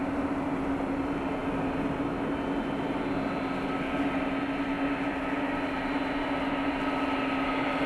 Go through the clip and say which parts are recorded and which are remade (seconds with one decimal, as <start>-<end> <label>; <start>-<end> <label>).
0.0-7.9 recorded